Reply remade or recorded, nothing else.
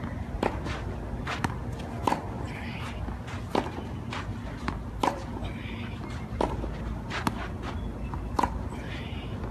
recorded